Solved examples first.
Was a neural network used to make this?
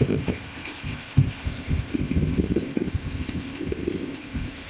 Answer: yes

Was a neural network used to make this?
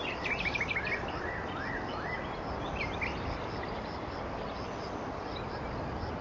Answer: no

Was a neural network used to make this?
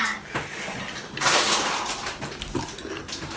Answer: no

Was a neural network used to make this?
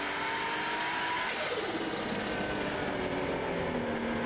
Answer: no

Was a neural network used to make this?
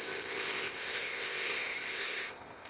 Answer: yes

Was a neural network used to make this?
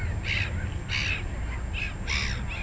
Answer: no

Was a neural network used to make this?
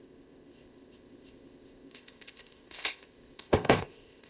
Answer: yes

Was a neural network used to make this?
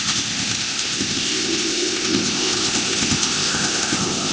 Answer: yes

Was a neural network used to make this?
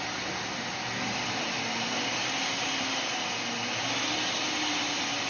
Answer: no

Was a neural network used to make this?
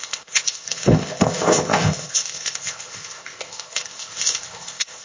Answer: yes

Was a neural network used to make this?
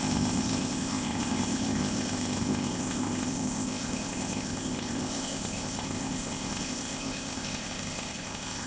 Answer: yes